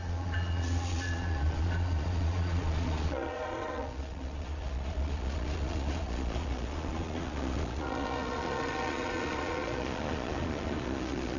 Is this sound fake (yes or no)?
yes